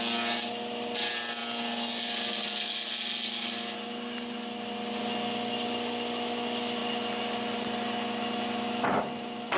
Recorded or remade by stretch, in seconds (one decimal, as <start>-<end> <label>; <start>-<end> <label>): 0.0-9.6 recorded